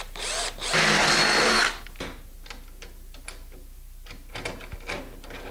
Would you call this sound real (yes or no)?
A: yes